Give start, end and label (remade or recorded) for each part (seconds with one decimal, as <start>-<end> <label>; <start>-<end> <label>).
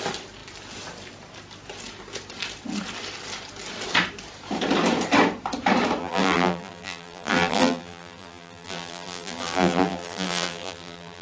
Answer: 0.0-6.0 recorded; 6.0-11.2 remade